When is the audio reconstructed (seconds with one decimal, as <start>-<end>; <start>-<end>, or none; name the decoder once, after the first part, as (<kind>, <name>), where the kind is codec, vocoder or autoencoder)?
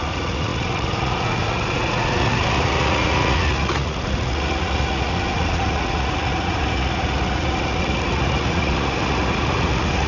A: 0.0-10.1 (vocoder, Vocos)